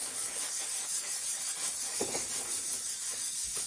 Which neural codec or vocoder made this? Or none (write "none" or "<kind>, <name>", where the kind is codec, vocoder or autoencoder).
codec, DAC